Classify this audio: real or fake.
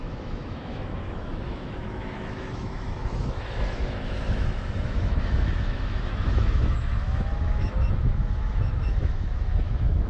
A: fake